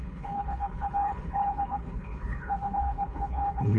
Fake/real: fake